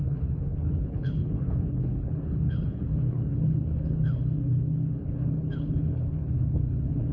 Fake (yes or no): yes